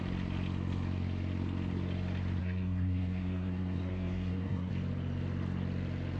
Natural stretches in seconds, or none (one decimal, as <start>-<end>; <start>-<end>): 0.0-2.4; 4.7-6.2